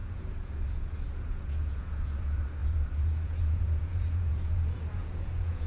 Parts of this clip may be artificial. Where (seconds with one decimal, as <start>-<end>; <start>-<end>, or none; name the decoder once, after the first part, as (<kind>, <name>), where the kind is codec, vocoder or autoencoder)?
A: 0.0-5.7 (vocoder, Vocos)